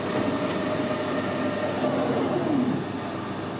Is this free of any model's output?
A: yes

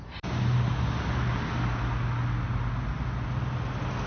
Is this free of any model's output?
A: yes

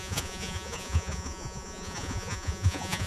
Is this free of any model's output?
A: no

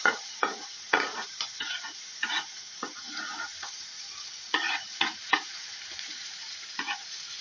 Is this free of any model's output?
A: no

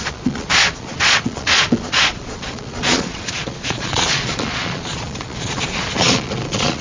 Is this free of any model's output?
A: no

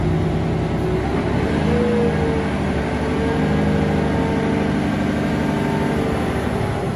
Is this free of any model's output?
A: yes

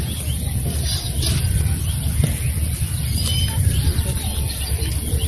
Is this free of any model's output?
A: yes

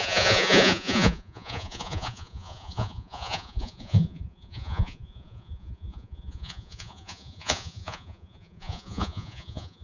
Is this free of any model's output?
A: no